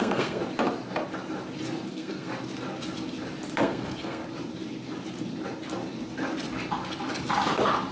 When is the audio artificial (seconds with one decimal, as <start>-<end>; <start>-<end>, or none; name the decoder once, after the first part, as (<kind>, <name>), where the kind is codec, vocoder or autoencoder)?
0.0-0.4 (codec, SNAC); 1.9-2.3; 3.6-4.2